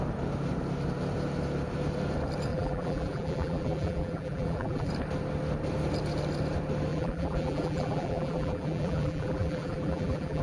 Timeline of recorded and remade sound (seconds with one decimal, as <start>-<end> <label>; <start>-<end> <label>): 0.0-2.5 recorded; 2.5-4.9 remade; 4.9-6.9 recorded; 6.9-10.4 remade

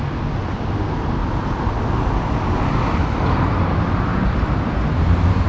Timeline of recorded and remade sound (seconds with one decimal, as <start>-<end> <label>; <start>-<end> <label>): 0.0-5.5 recorded

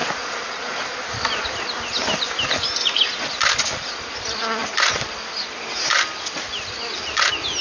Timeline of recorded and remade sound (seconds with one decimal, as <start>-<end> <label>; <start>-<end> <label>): 0.0-7.6 recorded

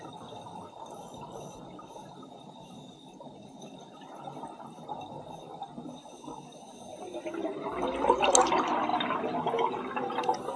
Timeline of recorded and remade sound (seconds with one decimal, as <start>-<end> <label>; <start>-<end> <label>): 0.0-10.6 recorded

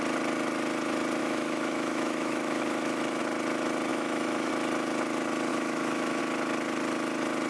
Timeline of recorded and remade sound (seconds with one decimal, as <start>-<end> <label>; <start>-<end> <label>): 0.0-1.2 recorded; 1.2-3.2 remade; 3.2-3.9 recorded; 3.9-4.5 remade; 4.5-5.5 recorded; 5.5-6.2 remade; 6.2-7.5 recorded

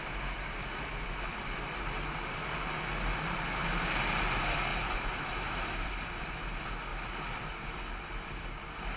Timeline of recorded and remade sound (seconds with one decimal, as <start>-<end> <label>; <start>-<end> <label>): 0.0-9.0 recorded

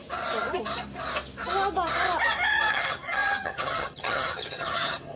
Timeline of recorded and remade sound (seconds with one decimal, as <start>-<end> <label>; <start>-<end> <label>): 0.0-2.7 recorded; 2.7-5.2 remade